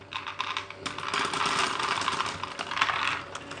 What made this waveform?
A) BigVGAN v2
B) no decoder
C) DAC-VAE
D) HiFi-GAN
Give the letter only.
B